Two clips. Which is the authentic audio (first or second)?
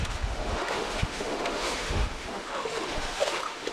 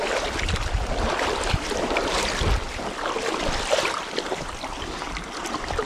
second